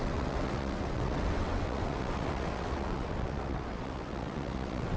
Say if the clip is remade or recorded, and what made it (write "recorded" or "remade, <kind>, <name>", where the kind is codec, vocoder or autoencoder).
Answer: remade, vocoder, WaveNeXt